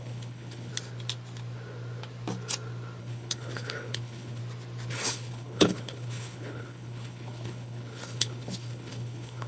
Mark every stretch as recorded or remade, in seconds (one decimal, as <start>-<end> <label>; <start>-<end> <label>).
0.0-0.7 remade; 0.7-3.0 recorded; 3.0-4.4 remade; 4.4-4.9 recorded; 4.9-9.5 remade